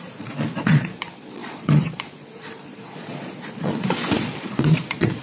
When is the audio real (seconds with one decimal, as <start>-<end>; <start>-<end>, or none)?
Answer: none